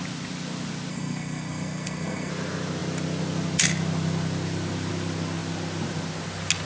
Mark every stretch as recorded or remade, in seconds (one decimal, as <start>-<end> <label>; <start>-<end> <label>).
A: 0.0-0.9 recorded; 0.9-2.3 remade; 2.3-6.7 recorded